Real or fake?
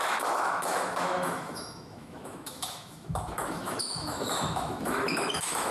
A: fake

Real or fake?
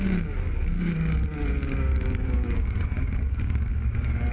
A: fake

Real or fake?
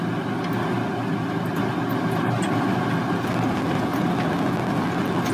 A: real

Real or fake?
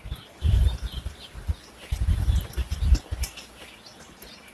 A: real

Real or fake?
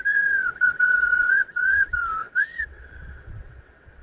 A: fake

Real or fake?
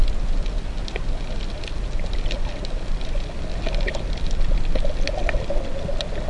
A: real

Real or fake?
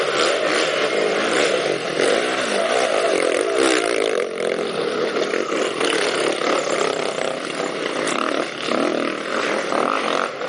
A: real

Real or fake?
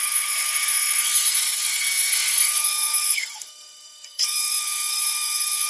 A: fake